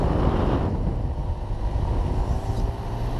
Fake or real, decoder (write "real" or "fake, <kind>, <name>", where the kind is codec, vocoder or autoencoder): real